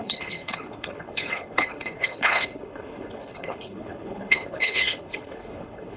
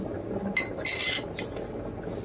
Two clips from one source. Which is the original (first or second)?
second